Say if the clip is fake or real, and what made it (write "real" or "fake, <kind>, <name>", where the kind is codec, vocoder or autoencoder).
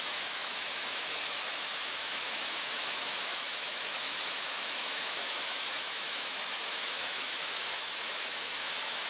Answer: fake, autoencoder, DAC-VAE